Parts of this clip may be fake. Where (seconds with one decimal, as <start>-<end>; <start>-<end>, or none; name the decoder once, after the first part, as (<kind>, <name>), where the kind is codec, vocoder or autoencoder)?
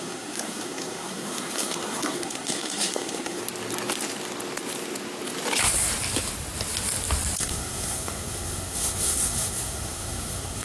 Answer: 0.0-3.4 (codec, SNAC); 7.4-10.6